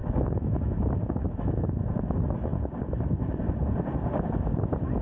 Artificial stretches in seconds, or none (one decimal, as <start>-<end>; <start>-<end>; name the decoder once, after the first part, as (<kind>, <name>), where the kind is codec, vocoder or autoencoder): 0.0-2.1 (autoencoder, DAC-VAE)